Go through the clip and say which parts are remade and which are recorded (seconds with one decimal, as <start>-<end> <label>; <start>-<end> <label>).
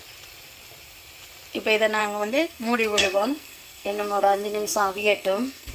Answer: 0.0-2.0 recorded; 2.0-5.7 remade